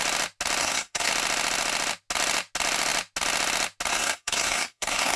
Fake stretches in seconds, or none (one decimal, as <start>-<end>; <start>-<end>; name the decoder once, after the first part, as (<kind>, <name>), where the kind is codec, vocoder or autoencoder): 0.6-1.1 (codec, SNAC); 3.9-5.2